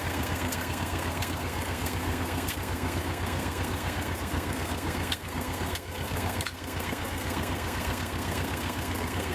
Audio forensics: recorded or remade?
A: remade